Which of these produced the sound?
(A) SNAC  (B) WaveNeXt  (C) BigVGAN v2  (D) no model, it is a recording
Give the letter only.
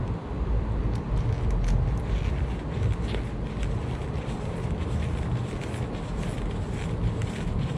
D